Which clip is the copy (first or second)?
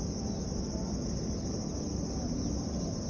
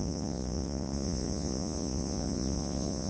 second